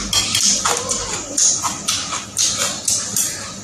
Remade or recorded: recorded